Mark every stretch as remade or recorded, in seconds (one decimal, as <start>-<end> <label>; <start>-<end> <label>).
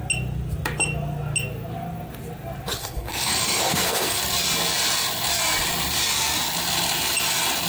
0.0-2.8 recorded; 2.8-4.2 remade; 4.2-7.7 recorded